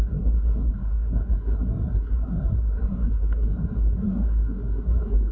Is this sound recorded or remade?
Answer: remade